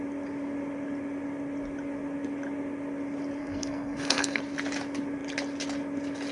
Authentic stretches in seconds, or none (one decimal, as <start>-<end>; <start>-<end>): 0.0-3.4; 4.4-6.3